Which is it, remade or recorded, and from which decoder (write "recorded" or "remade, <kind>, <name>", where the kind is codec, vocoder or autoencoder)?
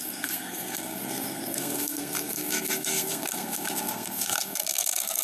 remade, codec, SNAC